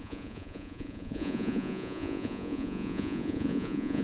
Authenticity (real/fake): fake